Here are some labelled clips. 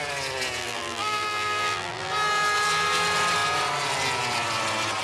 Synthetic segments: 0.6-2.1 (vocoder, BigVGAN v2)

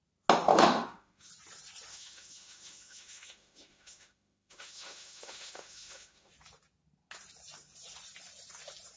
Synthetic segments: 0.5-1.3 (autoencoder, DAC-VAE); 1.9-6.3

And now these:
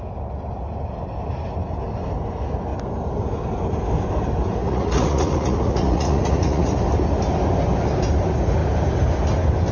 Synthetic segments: 4.6-6.7 (vocoder, Vocos)

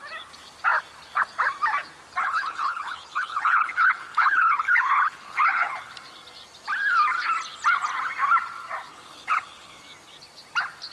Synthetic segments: 2.2-5.9 (codec, HILCodec); 8.9-9.8

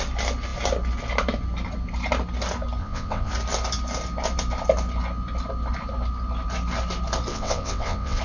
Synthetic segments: 2.8-3.3 (vocoder, WaveNeXt); 7.3-8.2

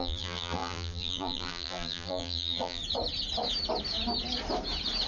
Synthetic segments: 0.0-2.8 (vocoder, BigVGAN v2)